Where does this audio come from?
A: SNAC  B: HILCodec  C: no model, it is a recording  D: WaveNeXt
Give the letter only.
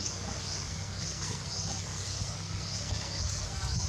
A